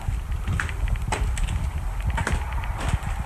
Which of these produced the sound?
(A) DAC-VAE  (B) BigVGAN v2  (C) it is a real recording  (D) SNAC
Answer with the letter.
C